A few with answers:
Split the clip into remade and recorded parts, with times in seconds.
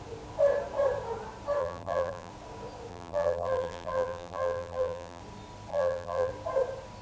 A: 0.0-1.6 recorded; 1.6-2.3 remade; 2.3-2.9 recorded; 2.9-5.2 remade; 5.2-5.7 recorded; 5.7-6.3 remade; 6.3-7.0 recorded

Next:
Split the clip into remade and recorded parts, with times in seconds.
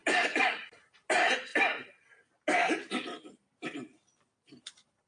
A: 0.0-1.1 recorded; 1.1-1.5 remade; 1.5-4.6 recorded; 4.6-5.1 remade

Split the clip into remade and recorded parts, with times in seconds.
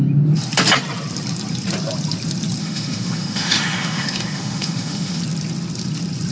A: 0.0-2.6 recorded; 2.6-5.2 remade; 5.2-6.3 recorded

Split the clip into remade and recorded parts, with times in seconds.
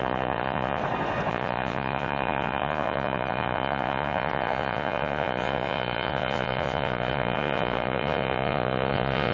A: 0.0-0.8 remade; 0.8-1.3 recorded; 1.3-9.3 remade